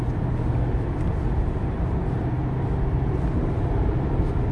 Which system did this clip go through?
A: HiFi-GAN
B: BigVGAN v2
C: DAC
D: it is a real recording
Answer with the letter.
D